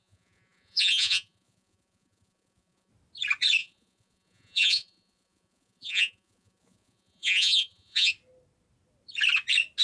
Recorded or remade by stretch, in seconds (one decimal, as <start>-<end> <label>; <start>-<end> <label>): 0.0-2.9 remade; 2.9-3.6 recorded; 3.6-8.1 remade; 8.1-9.8 recorded